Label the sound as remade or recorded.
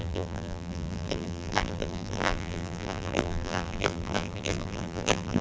remade